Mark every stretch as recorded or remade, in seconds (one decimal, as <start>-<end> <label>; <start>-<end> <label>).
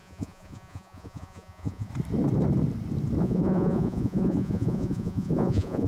0.0-1.9 remade; 1.9-3.2 recorded; 3.2-5.9 remade